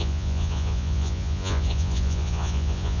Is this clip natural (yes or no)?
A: no